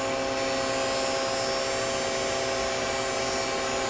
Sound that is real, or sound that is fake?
real